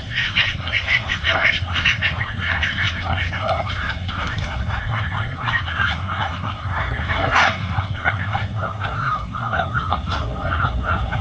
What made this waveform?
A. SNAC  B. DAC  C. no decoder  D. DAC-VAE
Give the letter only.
A